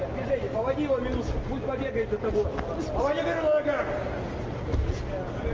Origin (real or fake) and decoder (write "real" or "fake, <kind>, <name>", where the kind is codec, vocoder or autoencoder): real